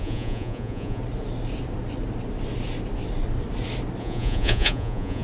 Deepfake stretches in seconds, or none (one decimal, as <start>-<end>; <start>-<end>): 0.0-1.0; 4.0-5.2